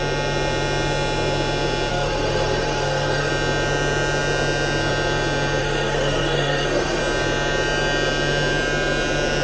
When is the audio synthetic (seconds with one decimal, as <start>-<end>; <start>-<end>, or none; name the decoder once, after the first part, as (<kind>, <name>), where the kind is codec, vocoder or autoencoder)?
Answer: 1.9-3.3 (codec, SNAC); 5.6-7.0